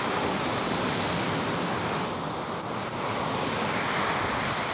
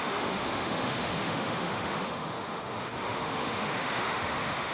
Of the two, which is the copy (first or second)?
second